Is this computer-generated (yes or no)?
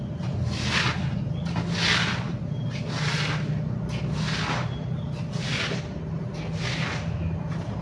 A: no